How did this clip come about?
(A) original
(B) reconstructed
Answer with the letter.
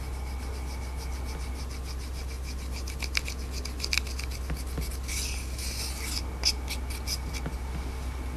A